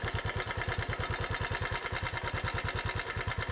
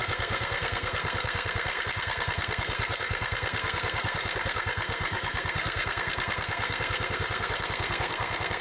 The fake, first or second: second